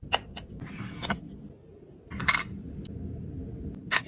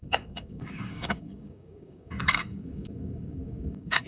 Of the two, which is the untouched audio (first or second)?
first